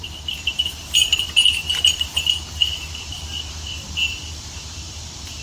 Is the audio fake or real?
real